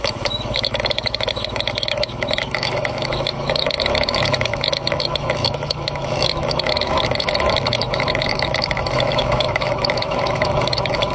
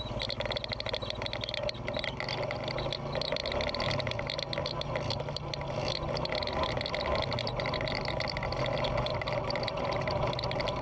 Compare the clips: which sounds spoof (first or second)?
first